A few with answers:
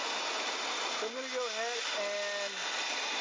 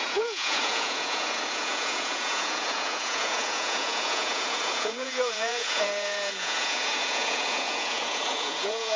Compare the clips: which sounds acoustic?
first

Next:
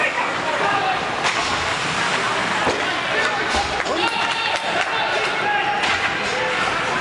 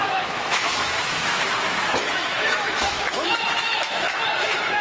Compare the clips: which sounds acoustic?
first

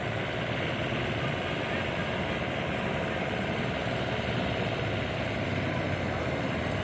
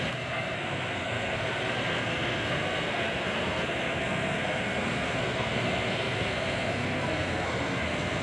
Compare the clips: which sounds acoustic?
first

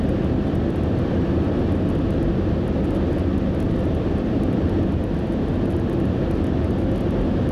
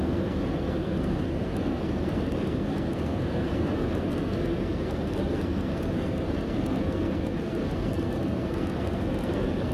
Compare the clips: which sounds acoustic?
first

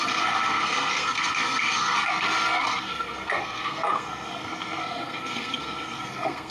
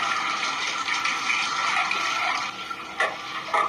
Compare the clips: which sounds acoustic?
second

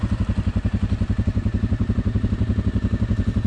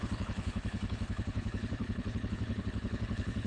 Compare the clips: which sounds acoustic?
first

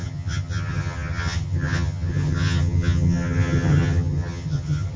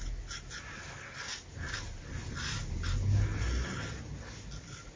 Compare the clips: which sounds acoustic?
second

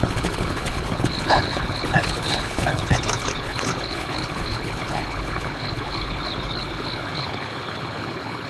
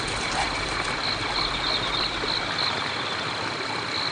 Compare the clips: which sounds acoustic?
second